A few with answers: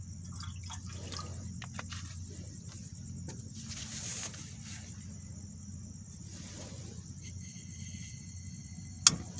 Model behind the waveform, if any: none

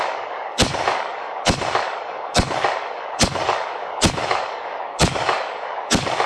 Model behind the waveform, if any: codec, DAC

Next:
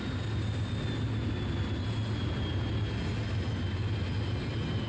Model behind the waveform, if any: none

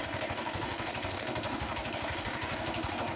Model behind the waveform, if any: codec, DAC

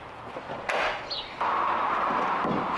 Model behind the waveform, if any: none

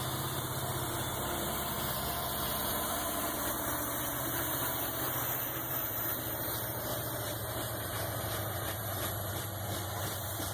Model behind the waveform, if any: vocoder, BigVGAN v2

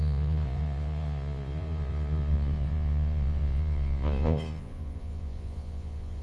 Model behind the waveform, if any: vocoder, Vocos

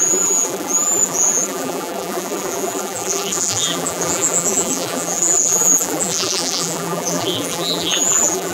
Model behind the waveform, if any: vocoder, BigVGAN v2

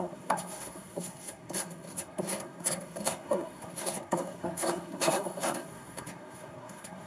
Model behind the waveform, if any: codec, SNAC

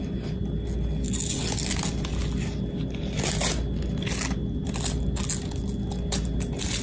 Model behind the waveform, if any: none